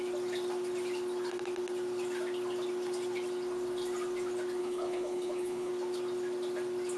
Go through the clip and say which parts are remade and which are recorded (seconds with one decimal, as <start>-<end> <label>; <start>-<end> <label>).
0.0-4.6 recorded; 4.6-5.7 remade; 5.7-7.0 recorded

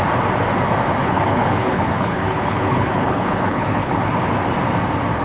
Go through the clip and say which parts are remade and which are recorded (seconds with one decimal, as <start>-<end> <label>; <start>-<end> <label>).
0.0-1.0 recorded; 1.0-4.1 remade; 4.1-5.2 recorded

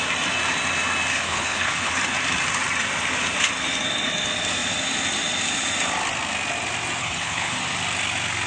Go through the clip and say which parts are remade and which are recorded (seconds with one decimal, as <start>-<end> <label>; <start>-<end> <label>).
0.0-1.1 recorded; 1.1-1.9 remade; 1.9-7.0 recorded; 7.0-7.6 remade; 7.6-8.5 recorded

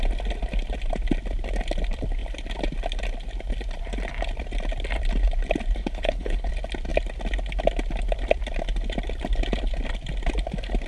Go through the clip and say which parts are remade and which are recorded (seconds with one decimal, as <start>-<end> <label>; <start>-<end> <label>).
0.0-5.8 recorded; 5.8-6.5 remade; 6.5-10.9 recorded

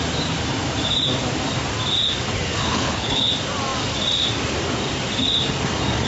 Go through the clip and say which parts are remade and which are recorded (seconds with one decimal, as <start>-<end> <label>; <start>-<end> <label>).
0.0-2.6 recorded; 2.6-3.3 remade; 3.3-6.1 recorded